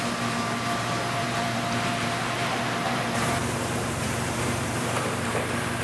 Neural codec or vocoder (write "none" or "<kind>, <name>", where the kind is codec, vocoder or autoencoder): vocoder, BigVGAN v2